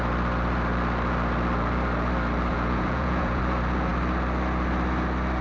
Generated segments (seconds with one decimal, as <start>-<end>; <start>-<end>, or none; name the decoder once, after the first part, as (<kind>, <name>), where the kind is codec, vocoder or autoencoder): 2.5-3.4 (vocoder, Vocos)